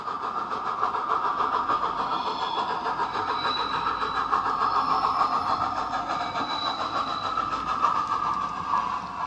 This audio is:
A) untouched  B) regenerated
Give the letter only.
A